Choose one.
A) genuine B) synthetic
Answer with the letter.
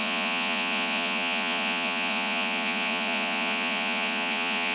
B